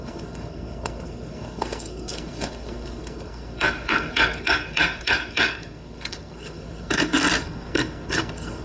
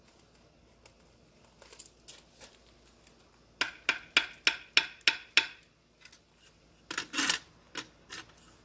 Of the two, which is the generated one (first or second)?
first